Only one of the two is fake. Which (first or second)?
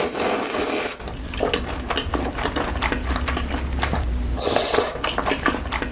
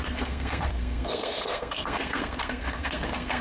second